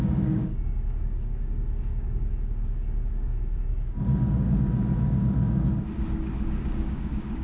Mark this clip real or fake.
fake